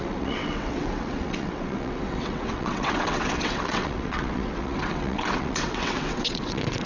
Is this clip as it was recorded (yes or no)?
no